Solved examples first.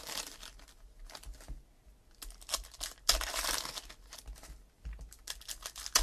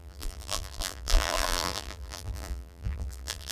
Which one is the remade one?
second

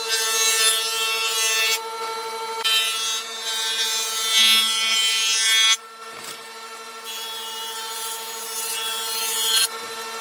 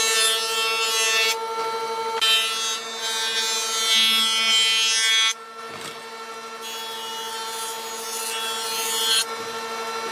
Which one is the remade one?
first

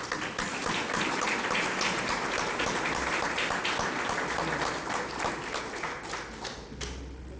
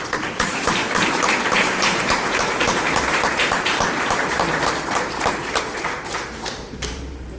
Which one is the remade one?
second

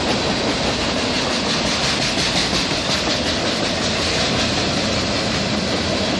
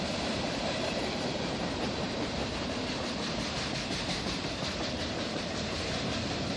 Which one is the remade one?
second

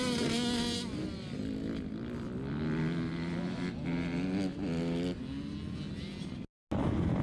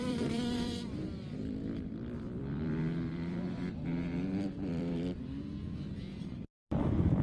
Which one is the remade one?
second